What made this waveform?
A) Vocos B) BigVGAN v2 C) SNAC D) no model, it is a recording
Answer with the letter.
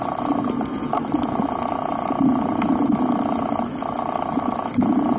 D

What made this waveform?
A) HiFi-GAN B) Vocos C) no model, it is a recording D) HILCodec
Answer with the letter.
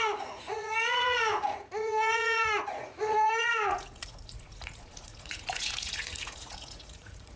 B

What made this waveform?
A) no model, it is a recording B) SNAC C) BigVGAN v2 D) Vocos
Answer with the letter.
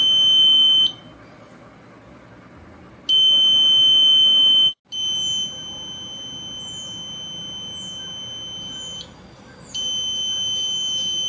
A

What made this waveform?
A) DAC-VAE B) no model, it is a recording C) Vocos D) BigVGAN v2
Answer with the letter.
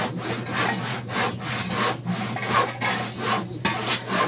B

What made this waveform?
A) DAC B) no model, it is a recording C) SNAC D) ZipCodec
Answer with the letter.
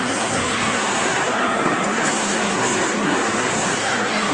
C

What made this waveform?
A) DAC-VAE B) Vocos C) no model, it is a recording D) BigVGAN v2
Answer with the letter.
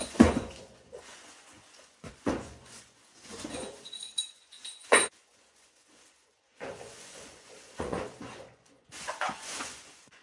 B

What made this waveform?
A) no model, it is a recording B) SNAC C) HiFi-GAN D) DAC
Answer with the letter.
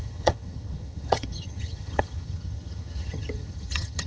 C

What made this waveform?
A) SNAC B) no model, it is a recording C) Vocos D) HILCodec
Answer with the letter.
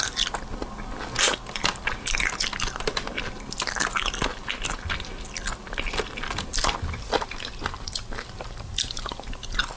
B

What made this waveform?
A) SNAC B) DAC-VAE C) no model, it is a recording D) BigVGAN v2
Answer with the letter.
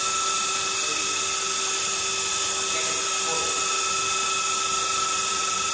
C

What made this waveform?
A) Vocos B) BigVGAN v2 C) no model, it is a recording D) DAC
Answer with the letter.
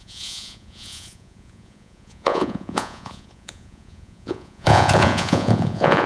A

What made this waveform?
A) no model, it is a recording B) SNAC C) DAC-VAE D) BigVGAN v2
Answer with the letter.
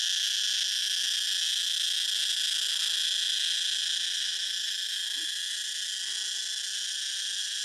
A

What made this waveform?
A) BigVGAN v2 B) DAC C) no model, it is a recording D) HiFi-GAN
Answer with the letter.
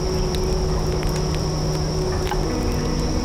C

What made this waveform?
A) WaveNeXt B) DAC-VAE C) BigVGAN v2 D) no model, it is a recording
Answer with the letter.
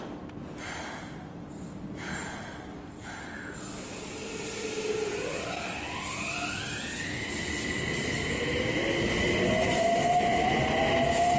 D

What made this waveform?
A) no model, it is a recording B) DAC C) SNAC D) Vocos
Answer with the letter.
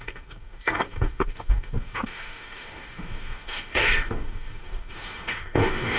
B